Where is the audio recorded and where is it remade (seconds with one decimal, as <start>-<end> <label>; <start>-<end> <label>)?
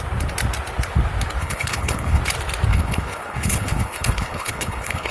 0.0-1.4 recorded; 1.4-2.2 remade; 2.2-2.7 recorded; 2.7-5.1 remade